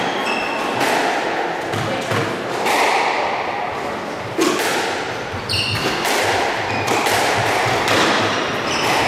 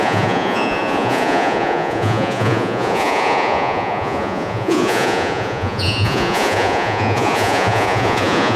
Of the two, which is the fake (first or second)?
second